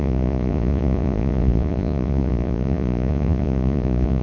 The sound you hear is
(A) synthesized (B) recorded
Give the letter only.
A